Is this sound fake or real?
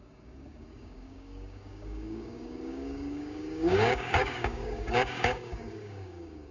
fake